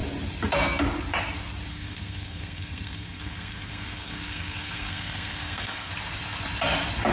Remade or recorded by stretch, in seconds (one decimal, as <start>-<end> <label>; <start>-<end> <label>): 0.0-1.7 recorded; 1.7-5.9 remade; 5.9-7.1 recorded